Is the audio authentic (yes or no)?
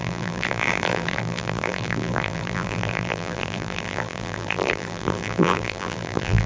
no